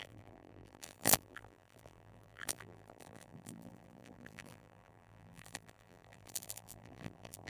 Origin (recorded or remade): remade